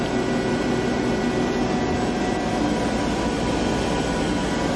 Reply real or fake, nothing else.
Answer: real